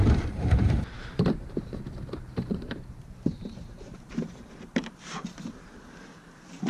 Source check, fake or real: fake